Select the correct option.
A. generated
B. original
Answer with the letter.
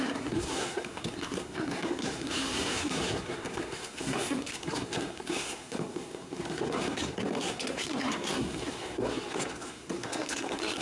A